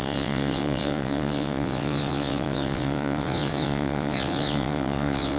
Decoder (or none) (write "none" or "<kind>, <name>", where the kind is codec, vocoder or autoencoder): vocoder, WaveNeXt